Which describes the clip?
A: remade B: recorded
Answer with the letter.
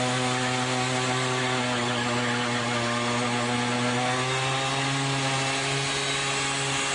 B